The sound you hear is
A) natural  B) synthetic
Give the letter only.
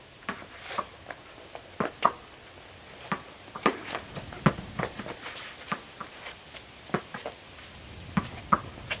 A